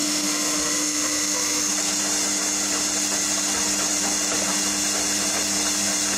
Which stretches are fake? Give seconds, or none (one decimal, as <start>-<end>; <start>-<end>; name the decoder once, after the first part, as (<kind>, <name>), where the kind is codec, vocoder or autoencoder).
0.0-1.7 (autoencoder, DAC-VAE)